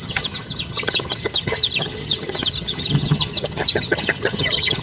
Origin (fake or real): fake